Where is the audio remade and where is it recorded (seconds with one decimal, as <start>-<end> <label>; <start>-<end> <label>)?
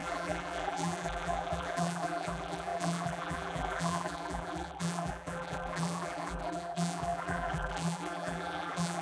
0.0-9.0 remade